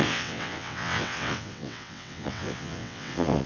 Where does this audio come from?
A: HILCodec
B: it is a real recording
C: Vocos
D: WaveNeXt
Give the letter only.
D